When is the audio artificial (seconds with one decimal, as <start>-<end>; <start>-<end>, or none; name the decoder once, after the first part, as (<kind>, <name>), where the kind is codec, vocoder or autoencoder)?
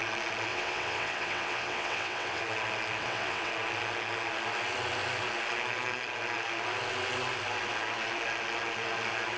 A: 0.5-2.4 (vocoder, WaveNeXt); 3.0-3.5